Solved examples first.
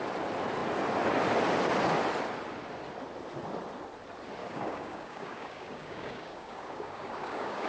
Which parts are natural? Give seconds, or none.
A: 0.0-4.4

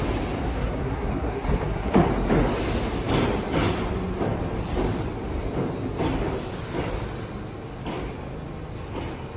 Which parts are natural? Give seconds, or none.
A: 0.0-0.4; 2.1-9.4

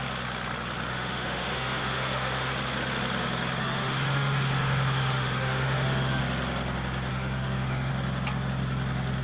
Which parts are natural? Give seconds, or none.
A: 0.0-0.9; 2.5-3.6; 6.2-7.1; 7.9-9.2

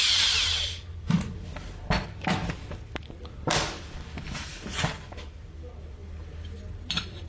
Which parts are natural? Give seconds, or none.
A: 6.0-6.7

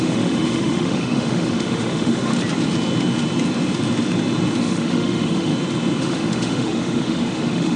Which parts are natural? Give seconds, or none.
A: 2.3-4.6; 5.5-6.0